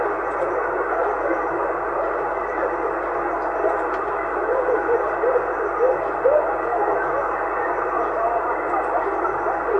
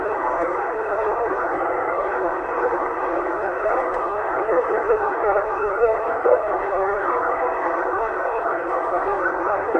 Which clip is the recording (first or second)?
first